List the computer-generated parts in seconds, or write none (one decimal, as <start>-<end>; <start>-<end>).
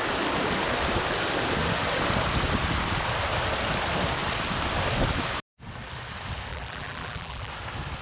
6.5-7.5